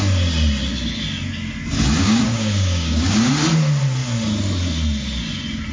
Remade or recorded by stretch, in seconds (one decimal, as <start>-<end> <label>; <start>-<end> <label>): 0.0-2.0 recorded; 2.0-3.3 remade; 3.3-5.7 recorded